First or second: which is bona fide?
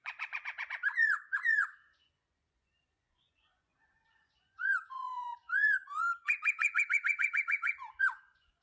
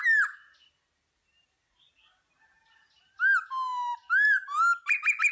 second